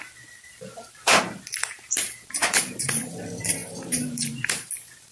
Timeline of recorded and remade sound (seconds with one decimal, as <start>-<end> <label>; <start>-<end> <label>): 0.0-5.1 remade